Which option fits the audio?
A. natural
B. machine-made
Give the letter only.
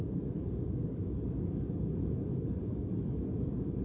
B